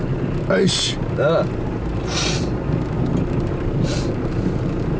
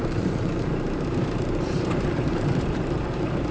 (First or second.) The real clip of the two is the first